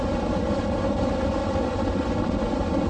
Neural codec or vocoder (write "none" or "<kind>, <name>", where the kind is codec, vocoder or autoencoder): none